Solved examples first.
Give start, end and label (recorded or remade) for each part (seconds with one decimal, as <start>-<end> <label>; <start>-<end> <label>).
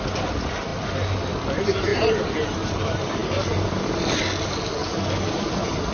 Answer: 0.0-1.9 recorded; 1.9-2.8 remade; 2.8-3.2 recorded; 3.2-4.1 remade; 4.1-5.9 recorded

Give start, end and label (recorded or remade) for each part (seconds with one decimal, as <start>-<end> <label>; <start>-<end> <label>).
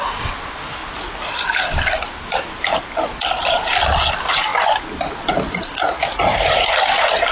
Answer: 0.0-7.3 recorded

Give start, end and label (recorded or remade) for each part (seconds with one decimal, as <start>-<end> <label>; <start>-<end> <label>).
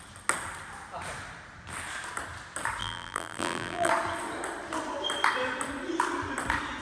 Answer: 0.0-2.8 recorded; 2.8-3.9 remade; 3.9-6.8 recorded